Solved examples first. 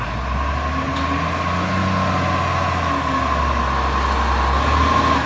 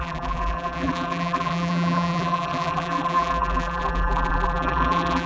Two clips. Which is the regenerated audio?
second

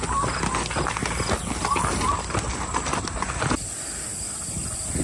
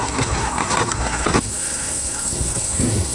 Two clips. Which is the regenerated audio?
second